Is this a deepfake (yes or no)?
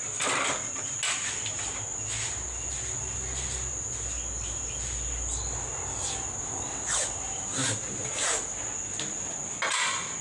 no